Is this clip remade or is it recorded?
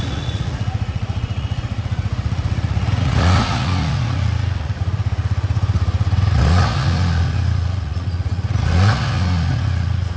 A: remade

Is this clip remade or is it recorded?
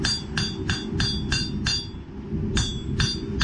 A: recorded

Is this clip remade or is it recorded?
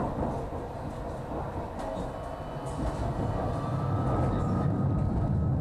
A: recorded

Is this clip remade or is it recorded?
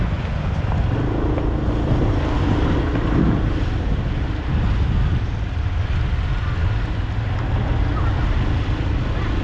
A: recorded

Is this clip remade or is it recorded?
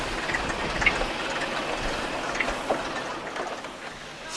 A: recorded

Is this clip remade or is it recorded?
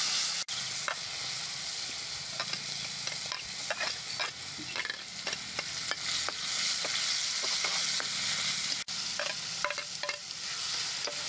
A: recorded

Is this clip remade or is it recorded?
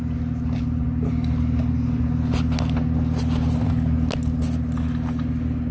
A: recorded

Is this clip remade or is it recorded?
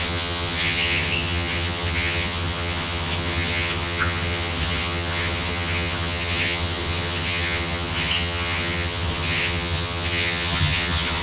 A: remade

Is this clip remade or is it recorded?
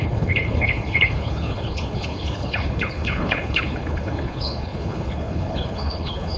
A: remade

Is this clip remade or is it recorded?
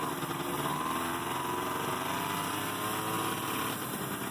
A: recorded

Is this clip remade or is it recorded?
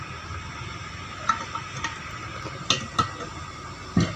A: recorded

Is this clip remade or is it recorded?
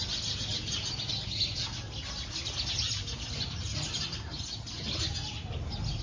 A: recorded